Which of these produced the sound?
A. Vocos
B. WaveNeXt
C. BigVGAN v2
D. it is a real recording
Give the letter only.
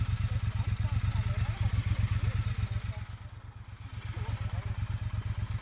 D